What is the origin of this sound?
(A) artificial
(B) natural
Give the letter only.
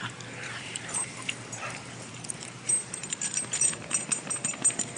A